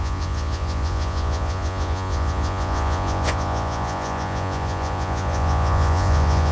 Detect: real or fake fake